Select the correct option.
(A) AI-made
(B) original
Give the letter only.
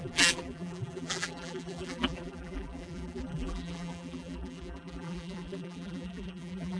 A